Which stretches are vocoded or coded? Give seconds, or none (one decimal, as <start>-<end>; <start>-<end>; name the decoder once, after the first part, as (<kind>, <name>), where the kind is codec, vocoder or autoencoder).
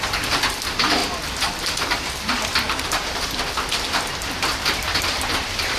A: 0.0-1.0 (vocoder, BigVGAN v2); 1.6-2.5; 4.5-5.8